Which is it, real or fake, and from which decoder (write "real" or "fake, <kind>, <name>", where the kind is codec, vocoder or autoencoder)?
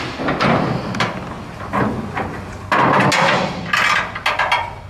real